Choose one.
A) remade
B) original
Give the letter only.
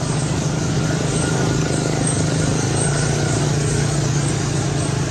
A